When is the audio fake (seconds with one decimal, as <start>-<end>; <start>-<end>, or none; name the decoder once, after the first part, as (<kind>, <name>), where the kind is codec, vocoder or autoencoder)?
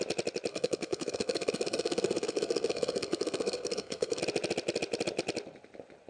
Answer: 0.5-4.2 (codec, SNAC)